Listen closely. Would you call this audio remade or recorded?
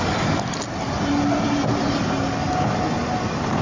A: recorded